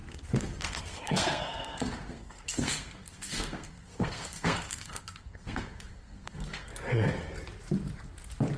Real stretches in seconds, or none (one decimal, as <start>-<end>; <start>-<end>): 6.7-8.6

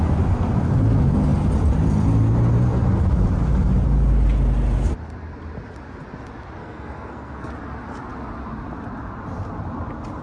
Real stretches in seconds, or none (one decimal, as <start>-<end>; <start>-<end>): 0.0-6.6; 7.5-10.2

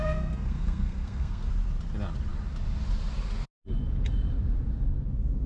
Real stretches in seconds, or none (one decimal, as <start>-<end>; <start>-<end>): 1.5-5.5

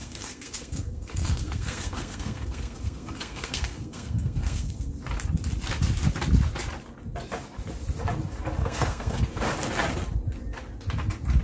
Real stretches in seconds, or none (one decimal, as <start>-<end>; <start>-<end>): 4.9-8.6; 9.2-11.4

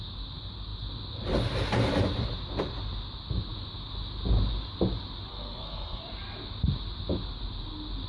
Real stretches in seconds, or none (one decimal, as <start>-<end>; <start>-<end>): 0.0-5.3; 6.0-8.1